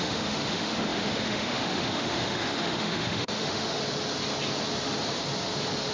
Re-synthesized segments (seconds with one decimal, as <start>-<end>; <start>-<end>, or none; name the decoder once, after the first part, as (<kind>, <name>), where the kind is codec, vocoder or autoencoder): 0.0-3.8 (autoencoder, DAC-VAE)